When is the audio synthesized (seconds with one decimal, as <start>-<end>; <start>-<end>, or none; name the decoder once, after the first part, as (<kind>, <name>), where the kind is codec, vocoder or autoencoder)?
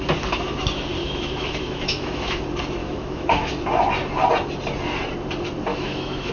1.0-2.4 (autoencoder, DAC-VAE); 2.8-3.5; 5.7-6.3